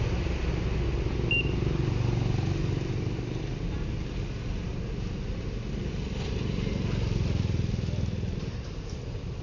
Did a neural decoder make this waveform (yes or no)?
no